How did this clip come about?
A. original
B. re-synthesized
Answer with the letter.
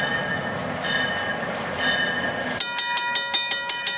A